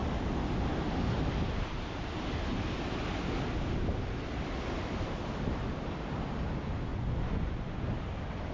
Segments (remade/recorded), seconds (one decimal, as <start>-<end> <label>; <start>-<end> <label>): 0.0-6.9 recorded; 6.9-7.8 remade; 7.8-8.5 recorded

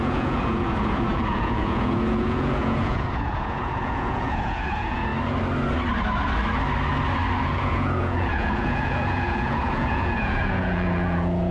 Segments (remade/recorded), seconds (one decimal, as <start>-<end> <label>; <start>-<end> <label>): 0.0-5.1 remade; 5.1-7.4 recorded; 7.4-11.5 remade

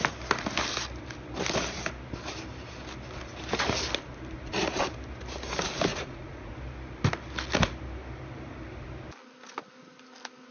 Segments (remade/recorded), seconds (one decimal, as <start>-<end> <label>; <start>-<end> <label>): 0.0-5.9 recorded; 5.9-6.5 remade; 6.5-10.5 recorded